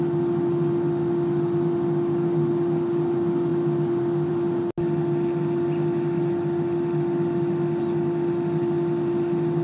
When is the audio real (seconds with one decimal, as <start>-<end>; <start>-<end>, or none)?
0.0-9.6